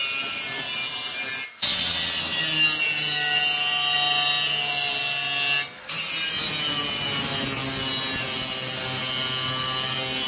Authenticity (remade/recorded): recorded